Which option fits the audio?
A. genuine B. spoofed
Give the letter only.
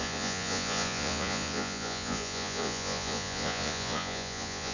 B